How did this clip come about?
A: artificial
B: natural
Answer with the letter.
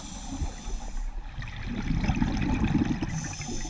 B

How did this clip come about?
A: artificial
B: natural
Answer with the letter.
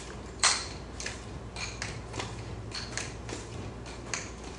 B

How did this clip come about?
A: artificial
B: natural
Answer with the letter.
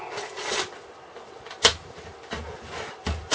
B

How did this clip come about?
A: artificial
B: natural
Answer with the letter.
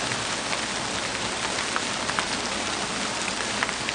B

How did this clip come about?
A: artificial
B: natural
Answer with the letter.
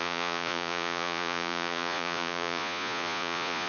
A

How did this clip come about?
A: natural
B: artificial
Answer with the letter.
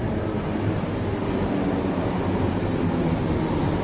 A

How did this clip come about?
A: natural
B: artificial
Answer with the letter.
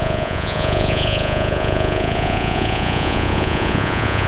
B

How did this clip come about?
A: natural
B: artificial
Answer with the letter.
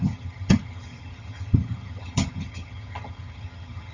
B